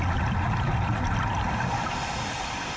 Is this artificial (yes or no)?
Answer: no